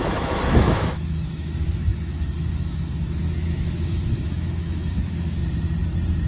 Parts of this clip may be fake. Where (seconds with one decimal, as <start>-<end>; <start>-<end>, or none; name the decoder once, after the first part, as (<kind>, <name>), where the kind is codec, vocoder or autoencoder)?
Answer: 0.0-5.4 (autoencoder, DAC-VAE)